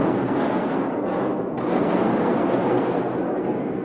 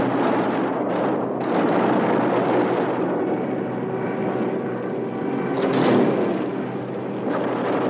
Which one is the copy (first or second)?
first